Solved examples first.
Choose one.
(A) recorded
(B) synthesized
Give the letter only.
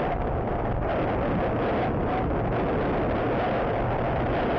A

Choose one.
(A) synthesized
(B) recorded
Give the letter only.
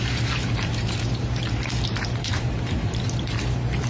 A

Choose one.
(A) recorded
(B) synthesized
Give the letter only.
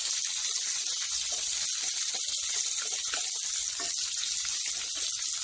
A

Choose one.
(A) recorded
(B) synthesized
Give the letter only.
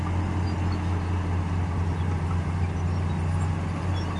A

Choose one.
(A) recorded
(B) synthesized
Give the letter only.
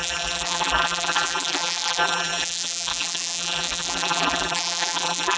B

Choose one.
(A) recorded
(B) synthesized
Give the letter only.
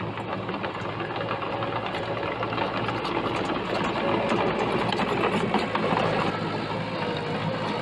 A